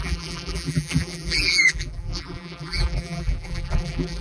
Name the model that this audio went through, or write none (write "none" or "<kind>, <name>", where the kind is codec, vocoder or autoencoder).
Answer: vocoder, BigVGAN v2